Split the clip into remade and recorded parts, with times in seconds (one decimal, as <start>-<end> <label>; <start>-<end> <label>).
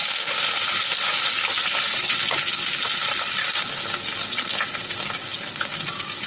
0.0-6.3 recorded